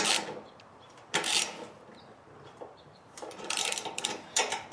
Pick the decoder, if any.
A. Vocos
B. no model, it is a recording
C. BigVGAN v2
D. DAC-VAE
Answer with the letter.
C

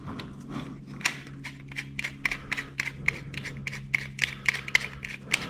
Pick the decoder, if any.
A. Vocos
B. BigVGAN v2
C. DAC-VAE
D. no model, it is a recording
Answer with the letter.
D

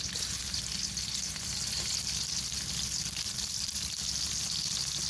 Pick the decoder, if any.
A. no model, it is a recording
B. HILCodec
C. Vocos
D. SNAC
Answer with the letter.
A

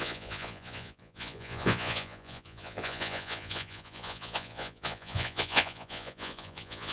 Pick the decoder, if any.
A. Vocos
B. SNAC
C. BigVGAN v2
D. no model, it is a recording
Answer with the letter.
A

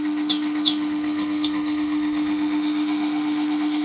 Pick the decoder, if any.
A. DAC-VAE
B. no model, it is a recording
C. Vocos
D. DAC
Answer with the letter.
A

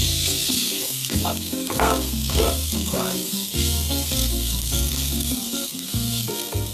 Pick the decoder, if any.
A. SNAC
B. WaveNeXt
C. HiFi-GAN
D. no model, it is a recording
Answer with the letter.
A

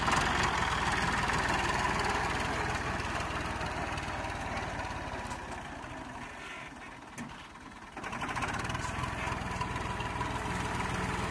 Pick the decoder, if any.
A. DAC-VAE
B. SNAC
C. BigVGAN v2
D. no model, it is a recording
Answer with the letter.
D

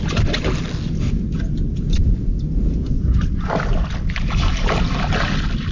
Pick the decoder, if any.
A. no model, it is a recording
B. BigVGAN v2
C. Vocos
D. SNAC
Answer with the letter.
A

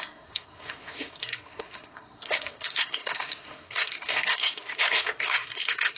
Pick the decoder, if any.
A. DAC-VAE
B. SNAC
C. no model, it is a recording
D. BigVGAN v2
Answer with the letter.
B